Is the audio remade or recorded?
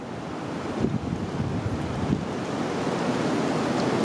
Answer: recorded